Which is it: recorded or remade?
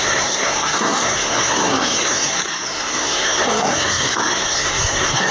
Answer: remade